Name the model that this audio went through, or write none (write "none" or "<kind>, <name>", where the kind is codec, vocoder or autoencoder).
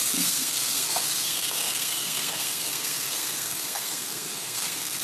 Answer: codec, SNAC